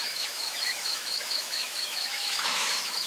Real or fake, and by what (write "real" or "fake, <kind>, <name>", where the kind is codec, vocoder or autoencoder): fake, autoencoder, DAC-VAE